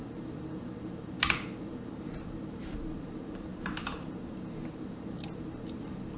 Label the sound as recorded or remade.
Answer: remade